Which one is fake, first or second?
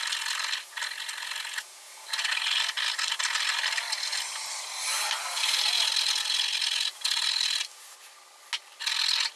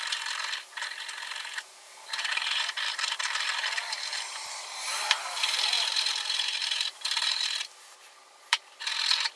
second